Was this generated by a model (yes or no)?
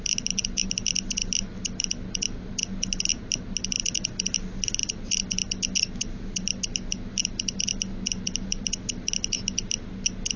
no